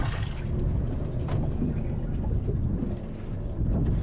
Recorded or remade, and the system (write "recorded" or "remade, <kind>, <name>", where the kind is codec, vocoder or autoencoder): recorded